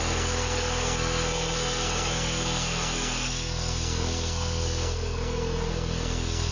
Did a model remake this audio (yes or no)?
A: yes